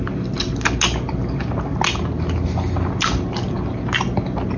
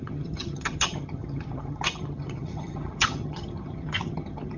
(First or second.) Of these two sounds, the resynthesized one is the second